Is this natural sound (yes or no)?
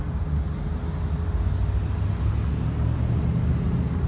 yes